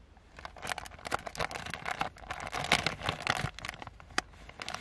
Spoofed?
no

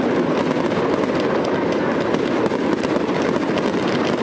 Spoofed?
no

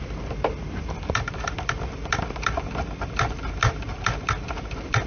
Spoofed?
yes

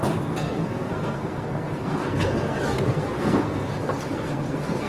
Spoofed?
yes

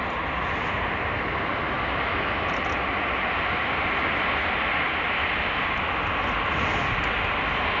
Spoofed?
no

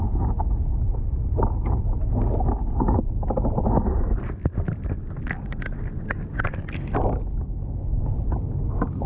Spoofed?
no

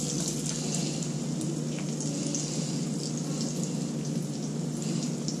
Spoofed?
no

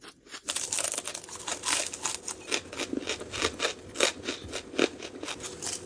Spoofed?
no